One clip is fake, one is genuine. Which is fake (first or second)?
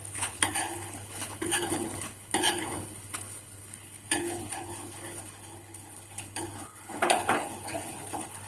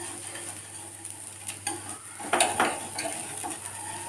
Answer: first